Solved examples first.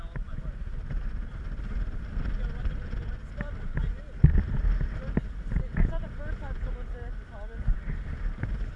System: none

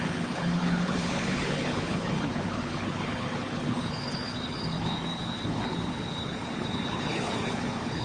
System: codec, HILCodec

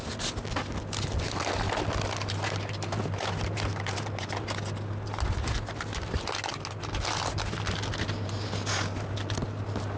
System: none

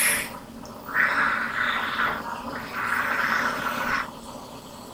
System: none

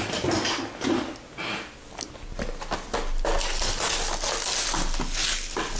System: none